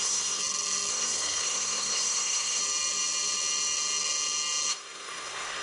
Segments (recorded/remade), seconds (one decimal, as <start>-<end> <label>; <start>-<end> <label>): 0.0-0.4 remade; 0.4-0.9 recorded; 0.9-2.6 remade; 2.6-4.7 recorded; 4.7-5.6 remade